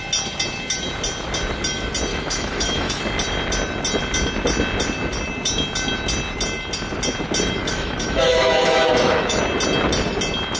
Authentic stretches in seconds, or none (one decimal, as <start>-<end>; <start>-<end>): 0.0-2.1; 3.0-7.6; 9.4-10.6